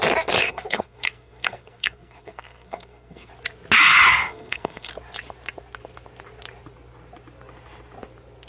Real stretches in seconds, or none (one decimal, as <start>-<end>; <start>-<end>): 0.0-0.4; 3.3-4.1; 4.9-8.5